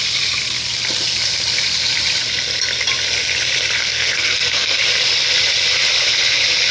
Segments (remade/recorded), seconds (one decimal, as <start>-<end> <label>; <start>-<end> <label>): 0.0-3.8 recorded; 3.8-4.8 remade; 4.8-6.7 recorded

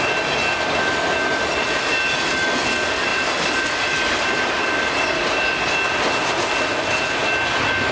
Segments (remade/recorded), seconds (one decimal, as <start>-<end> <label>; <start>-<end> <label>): 0.0-3.1 recorded; 3.1-4.8 remade; 4.8-7.9 recorded

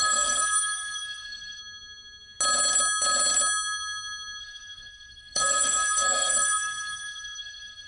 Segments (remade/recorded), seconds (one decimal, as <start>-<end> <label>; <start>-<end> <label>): 0.0-1.6 remade; 1.6-4.4 recorded; 4.4-7.9 remade

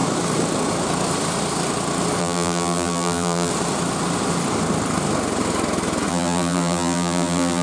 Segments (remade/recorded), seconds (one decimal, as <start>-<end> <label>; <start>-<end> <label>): 0.0-2.2 recorded; 2.2-3.5 remade; 3.5-6.1 recorded; 6.1-7.6 remade

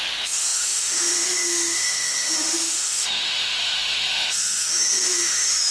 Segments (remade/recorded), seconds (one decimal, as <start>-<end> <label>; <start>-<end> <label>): 0.0-5.7 remade

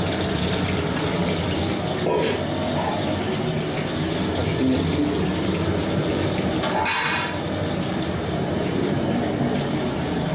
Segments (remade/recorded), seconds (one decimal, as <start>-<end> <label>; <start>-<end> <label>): 0.0-5.8 recorded; 5.8-10.3 remade

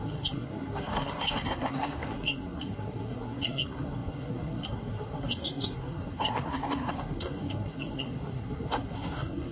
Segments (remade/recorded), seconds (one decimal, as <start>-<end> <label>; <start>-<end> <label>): 0.0-9.5 remade